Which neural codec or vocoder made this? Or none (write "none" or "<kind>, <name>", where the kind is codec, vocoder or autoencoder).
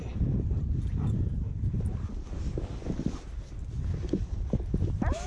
none